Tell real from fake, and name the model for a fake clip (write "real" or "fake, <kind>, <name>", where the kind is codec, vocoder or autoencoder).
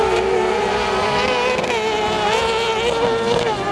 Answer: real